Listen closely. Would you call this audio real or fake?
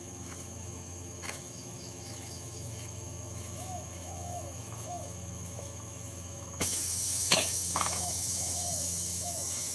fake